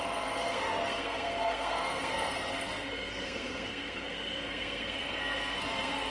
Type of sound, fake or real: fake